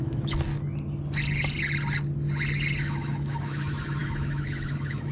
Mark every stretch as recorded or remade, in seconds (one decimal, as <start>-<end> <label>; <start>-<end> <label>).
0.0-0.5 remade; 0.5-2.8 recorded; 2.8-5.1 remade